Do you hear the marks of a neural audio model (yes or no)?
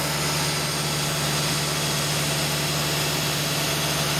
no